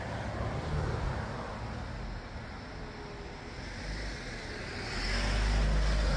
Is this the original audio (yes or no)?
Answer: yes